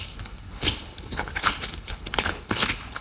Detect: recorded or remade remade